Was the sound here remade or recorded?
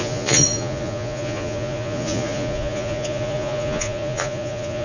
remade